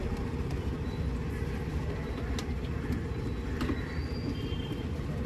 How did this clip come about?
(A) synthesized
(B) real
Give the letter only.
B